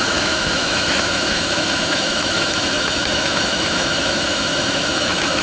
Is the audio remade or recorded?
remade